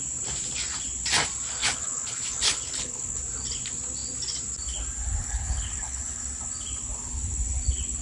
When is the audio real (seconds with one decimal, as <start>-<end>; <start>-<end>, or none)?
0.0-1.6; 3.2-5.2; 6.2-8.0